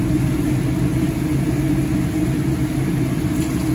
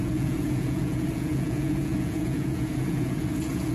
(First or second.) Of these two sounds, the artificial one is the second